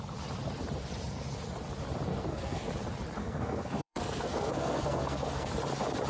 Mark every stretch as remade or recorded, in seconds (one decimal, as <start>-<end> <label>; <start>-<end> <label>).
0.0-2.1 recorded; 2.1-2.7 remade; 2.7-3.2 recorded; 3.2-5.5 remade; 5.5-6.1 recorded